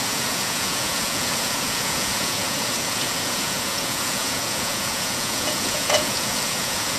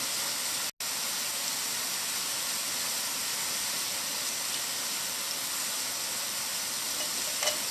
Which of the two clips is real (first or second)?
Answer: second